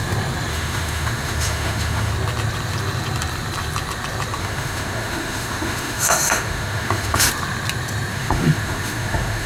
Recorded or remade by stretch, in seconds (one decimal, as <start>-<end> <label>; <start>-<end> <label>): 0.0-0.5 recorded; 0.5-2.1 remade; 2.1-4.4 recorded; 4.4-7.3 remade; 7.3-8.1 recorded; 8.1-9.5 remade